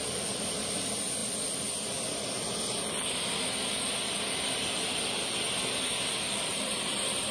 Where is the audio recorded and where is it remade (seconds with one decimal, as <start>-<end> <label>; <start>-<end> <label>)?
0.0-6.5 recorded; 6.5-7.3 remade